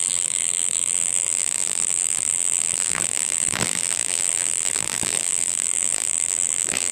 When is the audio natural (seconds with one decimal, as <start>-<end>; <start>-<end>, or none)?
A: none